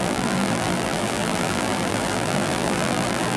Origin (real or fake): fake